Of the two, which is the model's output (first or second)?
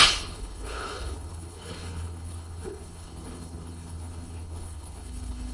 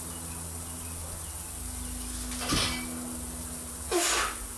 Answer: first